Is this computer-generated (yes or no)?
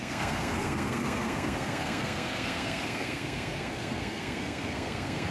yes